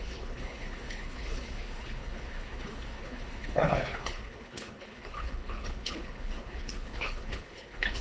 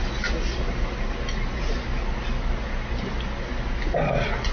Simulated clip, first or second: first